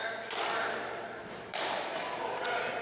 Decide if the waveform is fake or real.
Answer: real